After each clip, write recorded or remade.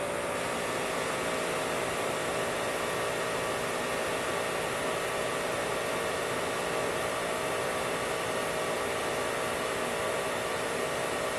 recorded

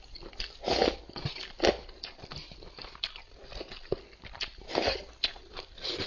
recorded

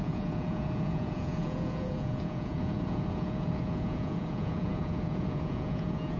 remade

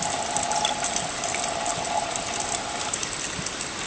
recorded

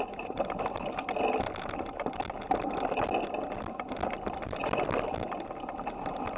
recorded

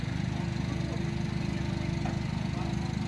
recorded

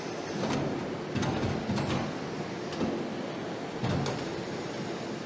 recorded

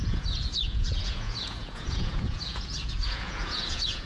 remade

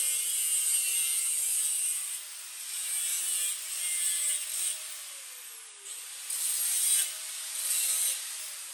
recorded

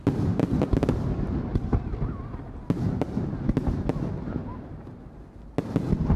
recorded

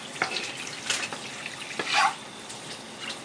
recorded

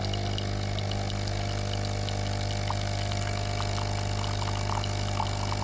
recorded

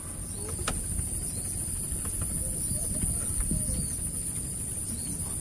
recorded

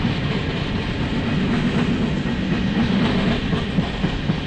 recorded